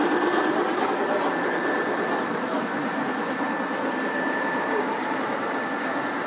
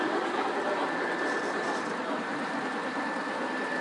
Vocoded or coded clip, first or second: second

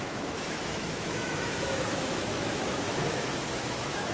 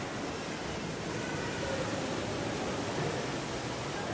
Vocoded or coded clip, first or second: first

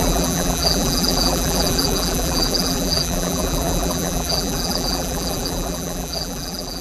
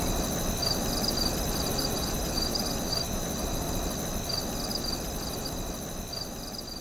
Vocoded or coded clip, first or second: first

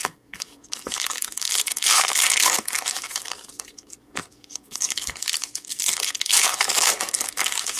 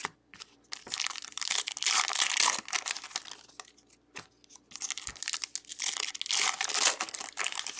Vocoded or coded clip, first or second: first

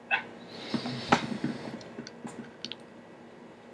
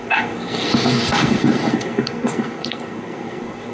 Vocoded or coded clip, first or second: second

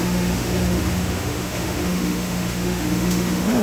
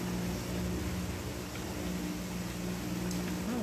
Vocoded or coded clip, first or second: first